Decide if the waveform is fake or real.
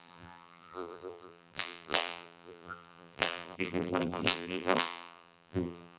fake